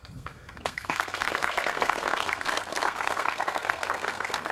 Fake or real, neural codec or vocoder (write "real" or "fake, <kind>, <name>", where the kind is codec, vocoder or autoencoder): fake, codec, SNAC